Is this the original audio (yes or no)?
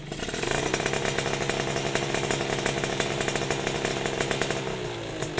yes